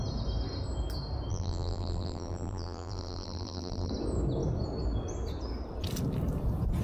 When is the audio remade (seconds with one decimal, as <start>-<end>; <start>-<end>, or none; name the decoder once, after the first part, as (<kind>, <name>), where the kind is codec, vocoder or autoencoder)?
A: 1.3-3.9 (vocoder, BigVGAN v2)